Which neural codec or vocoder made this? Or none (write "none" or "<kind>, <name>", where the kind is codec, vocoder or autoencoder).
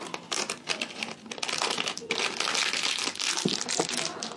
none